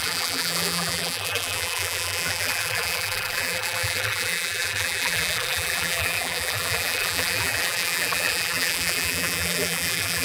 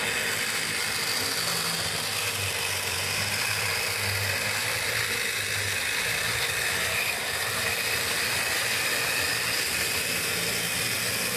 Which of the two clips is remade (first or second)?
first